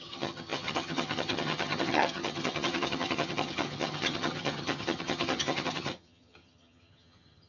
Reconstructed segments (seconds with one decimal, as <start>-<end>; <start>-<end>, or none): 0.0-7.5